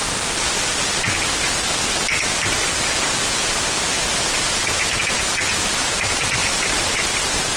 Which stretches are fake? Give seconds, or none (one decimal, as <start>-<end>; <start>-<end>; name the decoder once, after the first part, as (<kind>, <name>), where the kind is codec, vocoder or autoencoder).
4.0-4.7 (vocoder, BigVGAN v2); 6.4-7.0